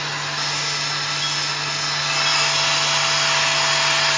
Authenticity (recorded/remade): recorded